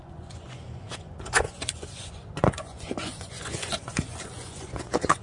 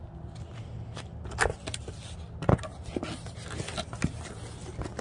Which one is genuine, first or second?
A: second